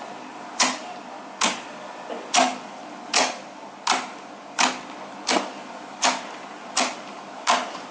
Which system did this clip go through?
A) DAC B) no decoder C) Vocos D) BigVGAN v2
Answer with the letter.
B